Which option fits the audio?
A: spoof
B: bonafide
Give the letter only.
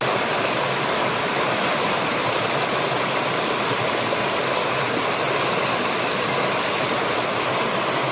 B